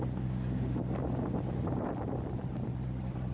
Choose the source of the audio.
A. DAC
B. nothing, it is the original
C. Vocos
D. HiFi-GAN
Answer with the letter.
B